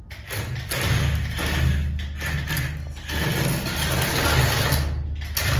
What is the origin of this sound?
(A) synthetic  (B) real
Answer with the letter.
B